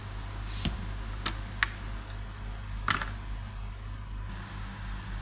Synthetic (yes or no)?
no